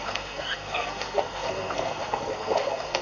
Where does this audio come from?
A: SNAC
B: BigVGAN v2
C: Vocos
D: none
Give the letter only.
A